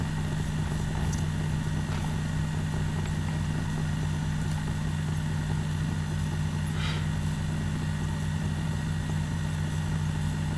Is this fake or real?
real